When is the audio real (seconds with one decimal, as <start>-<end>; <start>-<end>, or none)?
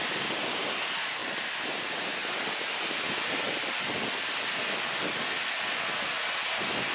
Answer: 0.0-6.9